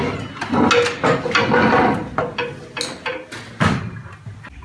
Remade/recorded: recorded